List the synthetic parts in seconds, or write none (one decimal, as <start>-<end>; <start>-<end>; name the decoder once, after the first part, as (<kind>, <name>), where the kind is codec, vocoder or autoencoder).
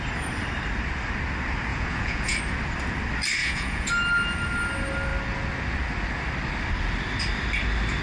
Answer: 1.7-2.4 (vocoder, Vocos); 3.4-3.9